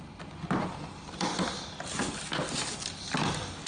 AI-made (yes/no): no